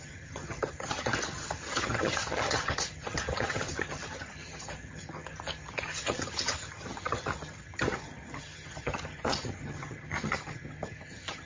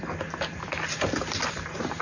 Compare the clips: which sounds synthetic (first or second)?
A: first